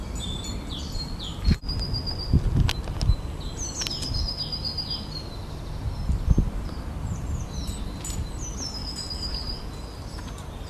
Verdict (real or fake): real